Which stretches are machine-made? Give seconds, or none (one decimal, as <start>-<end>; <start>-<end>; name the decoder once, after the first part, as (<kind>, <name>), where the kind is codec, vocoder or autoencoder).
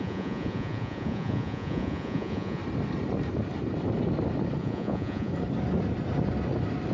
0.0-2.6 (vocoder, Vocos); 4.6-5.3